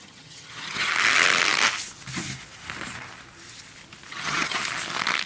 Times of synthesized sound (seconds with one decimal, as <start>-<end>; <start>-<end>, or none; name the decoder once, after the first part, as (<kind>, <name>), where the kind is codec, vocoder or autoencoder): 0.0-0.9 (vocoder, HiFi-GAN); 4.1-4.6